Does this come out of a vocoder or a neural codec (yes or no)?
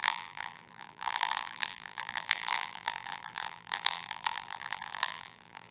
yes